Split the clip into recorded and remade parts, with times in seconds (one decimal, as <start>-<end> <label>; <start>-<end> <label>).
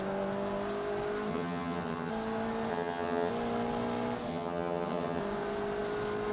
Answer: 0.0-1.3 recorded; 1.3-2.1 remade; 2.1-2.7 recorded; 2.7-3.3 remade; 3.3-4.3 recorded; 4.3-5.2 remade; 5.2-6.3 recorded